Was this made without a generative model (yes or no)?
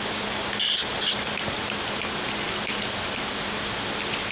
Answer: yes